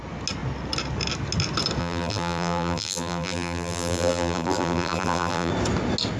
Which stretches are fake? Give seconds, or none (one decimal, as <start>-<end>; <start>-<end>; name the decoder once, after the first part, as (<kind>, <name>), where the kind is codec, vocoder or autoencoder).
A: 1.8-5.5 (vocoder, BigVGAN v2)